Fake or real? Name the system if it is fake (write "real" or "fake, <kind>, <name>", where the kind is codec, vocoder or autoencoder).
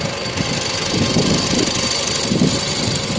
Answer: real